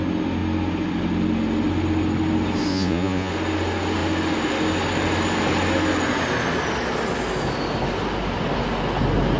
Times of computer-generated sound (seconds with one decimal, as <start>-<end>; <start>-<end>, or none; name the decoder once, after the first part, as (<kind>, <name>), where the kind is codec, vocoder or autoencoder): 2.7-3.3 (vocoder, Vocos)